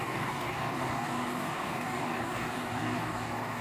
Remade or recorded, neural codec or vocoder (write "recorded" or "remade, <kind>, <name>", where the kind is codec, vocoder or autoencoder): remade, codec, DAC